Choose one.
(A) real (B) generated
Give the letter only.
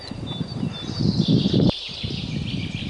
A